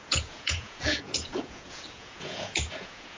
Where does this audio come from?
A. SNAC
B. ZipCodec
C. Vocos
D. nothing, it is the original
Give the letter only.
C